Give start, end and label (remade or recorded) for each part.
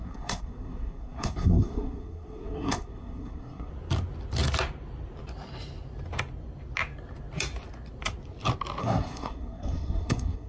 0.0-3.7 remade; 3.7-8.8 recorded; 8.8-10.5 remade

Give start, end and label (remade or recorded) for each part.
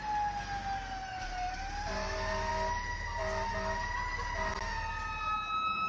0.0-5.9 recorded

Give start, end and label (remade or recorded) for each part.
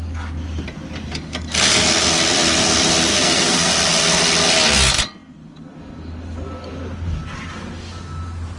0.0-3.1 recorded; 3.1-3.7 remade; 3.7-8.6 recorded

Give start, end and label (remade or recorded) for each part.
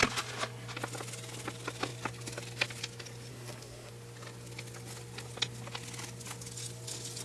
0.0-3.3 recorded; 3.3-3.9 remade; 3.9-7.2 recorded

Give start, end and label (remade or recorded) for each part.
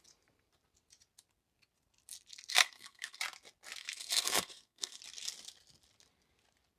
0.0-2.5 recorded; 2.5-3.2 remade; 3.2-3.8 recorded; 3.8-5.0 remade; 5.0-6.8 recorded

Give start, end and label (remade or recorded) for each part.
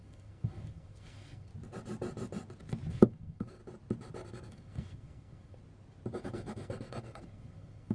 0.0-1.5 remade; 1.5-2.9 recorded; 2.9-3.6 remade; 3.6-4.3 recorded; 4.3-5.6 remade; 5.6-6.2 recorded; 6.2-7.9 remade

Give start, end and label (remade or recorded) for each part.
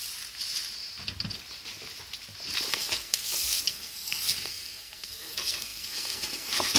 0.0-2.7 recorded; 2.7-6.8 remade